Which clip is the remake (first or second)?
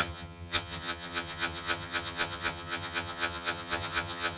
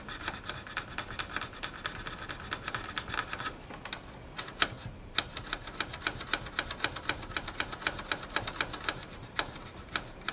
first